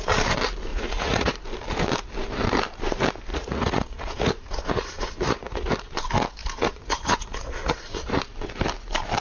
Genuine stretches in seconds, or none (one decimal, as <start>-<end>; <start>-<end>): 0.0-0.7; 1.3-3.3; 5.7-6.4; 8.2-9.2